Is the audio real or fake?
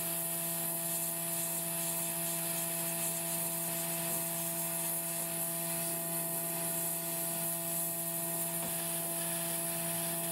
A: real